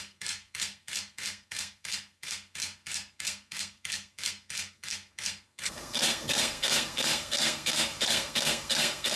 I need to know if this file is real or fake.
fake